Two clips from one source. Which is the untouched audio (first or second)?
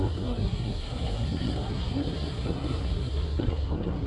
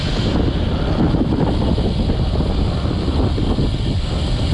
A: second